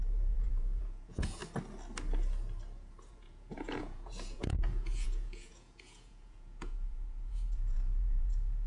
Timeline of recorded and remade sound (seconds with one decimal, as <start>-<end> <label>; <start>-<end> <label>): 0.0-1.4 remade; 1.4-3.1 recorded; 3.1-8.7 remade